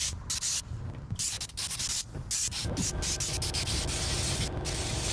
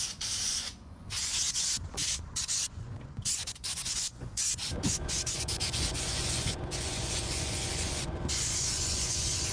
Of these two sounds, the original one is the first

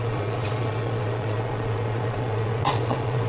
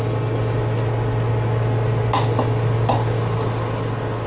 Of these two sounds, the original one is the second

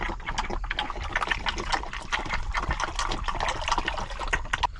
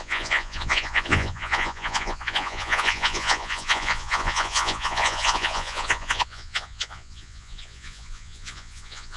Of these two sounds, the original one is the first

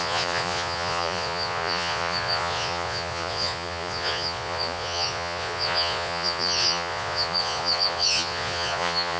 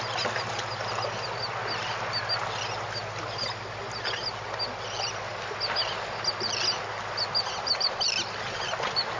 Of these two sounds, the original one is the second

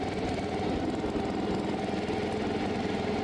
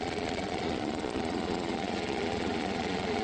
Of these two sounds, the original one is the first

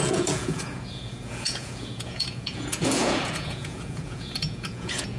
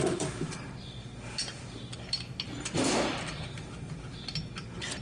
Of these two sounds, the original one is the second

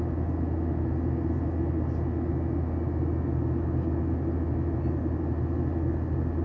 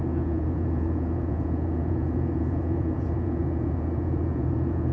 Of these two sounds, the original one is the first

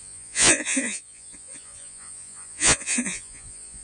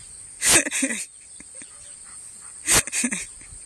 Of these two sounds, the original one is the second